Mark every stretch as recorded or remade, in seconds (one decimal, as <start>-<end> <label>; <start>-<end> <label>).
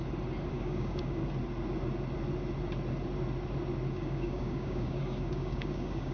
0.0-0.5 recorded; 0.5-1.2 remade; 1.2-3.9 recorded; 3.9-6.1 remade